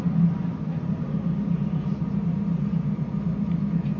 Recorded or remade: recorded